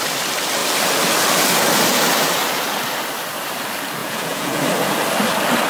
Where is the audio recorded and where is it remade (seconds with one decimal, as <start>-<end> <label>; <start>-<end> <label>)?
0.0-4.0 recorded; 4.0-4.6 remade; 4.6-5.7 recorded